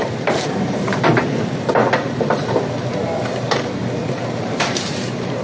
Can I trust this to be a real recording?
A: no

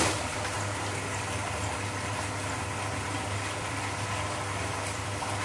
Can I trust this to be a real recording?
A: no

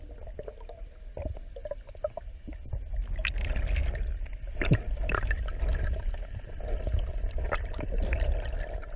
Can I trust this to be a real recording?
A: yes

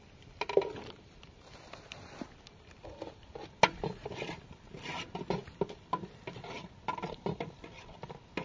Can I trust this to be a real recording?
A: yes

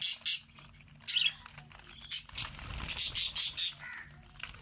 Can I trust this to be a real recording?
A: yes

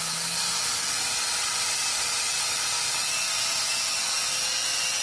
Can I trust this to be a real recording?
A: yes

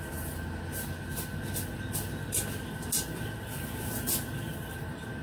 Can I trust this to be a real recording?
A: yes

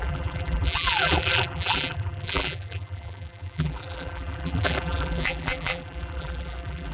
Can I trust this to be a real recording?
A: no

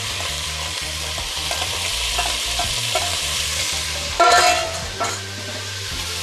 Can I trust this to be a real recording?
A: no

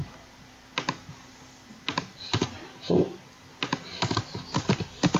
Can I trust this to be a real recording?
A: yes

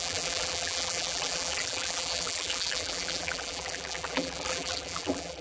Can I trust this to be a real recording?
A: no